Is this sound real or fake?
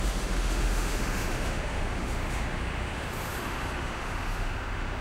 fake